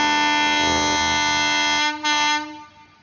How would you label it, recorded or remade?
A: recorded